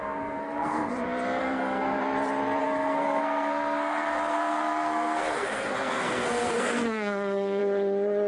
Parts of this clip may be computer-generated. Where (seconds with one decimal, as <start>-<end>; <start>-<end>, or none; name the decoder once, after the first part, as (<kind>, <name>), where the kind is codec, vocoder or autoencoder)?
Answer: 0.0-0.9 (codec, SNAC); 1.4-2.0; 2.6-7.6